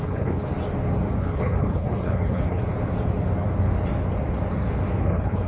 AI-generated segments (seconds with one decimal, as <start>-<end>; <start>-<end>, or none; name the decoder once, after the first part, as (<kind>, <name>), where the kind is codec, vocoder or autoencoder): 0.0-0.5 (codec, HILCodec); 1.2-2.6; 5.0-5.5